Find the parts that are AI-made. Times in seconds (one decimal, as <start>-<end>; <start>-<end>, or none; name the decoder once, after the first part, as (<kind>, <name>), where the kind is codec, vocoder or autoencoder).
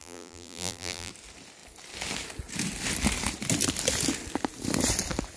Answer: 0.0-1.1 (vocoder, BigVGAN v2)